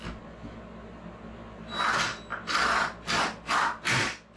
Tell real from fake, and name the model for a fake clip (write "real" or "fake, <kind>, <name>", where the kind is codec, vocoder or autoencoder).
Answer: real